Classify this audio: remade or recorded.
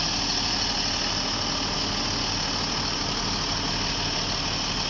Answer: recorded